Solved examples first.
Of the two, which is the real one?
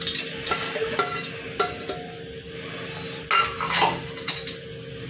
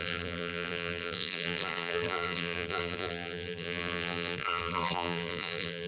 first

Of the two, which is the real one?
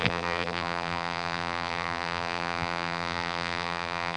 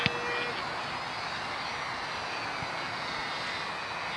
second